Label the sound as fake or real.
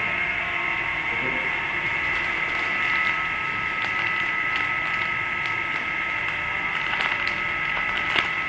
real